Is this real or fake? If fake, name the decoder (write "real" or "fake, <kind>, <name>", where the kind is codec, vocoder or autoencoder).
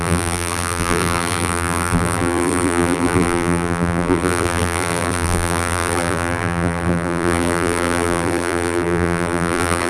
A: fake, vocoder, BigVGAN v2